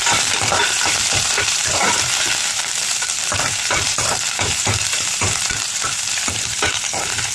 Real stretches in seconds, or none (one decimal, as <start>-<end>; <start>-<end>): none